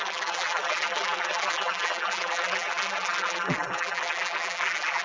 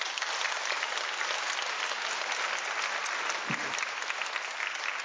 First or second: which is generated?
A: first